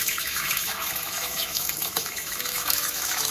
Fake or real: fake